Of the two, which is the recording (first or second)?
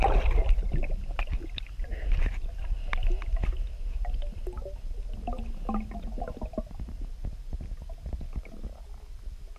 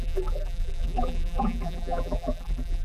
first